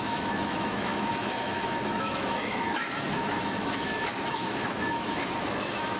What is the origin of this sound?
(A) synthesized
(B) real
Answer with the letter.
A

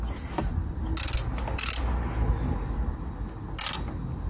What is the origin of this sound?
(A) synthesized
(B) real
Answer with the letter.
B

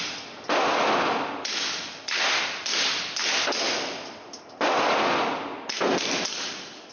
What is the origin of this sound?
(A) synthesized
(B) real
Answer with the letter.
B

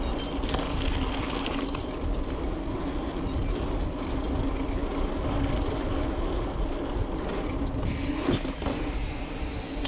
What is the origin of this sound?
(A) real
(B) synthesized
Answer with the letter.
A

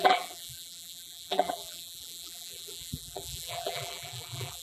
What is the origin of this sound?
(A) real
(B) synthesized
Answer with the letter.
B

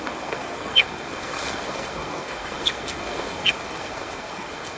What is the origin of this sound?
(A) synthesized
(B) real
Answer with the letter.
A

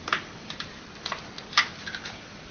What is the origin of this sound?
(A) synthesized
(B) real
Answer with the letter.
B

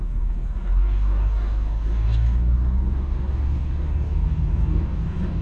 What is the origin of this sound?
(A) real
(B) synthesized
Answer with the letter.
B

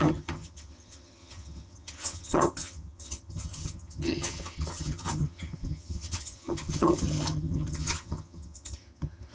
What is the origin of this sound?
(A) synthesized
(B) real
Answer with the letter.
A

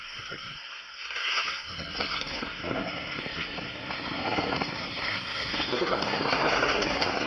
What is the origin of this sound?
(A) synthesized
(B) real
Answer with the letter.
A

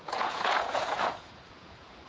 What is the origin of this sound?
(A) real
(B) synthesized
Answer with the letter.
B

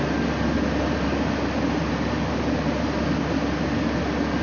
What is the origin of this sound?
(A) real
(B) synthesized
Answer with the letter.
A